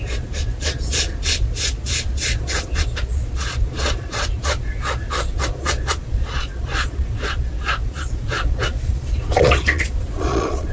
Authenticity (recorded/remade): remade